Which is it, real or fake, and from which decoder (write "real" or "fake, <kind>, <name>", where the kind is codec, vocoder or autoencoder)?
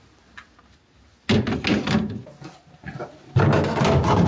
real